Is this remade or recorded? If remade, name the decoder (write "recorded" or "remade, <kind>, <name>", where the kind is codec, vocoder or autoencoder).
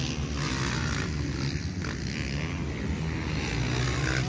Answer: recorded